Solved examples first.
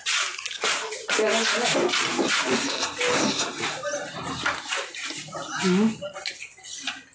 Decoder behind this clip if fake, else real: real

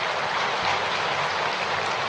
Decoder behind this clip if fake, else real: real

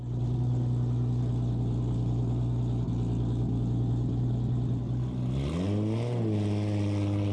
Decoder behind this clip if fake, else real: real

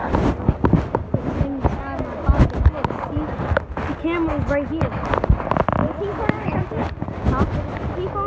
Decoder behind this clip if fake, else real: real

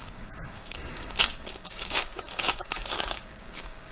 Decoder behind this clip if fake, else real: fake, codec, DAC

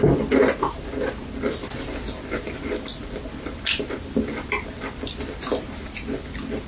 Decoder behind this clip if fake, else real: real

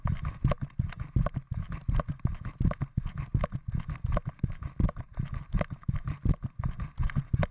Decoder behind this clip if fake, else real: real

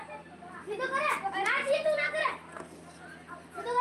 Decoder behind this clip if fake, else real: real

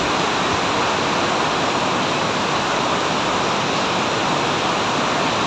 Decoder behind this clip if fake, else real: real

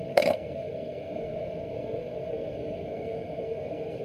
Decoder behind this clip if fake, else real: fake, codec, SNAC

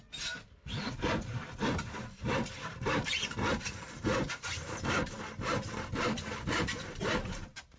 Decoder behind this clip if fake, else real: fake, vocoder, BigVGAN v2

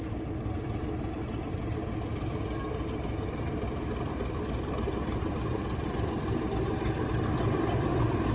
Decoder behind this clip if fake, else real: real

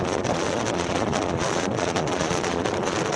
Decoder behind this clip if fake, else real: fake, vocoder, Vocos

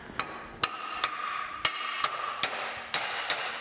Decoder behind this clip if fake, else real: real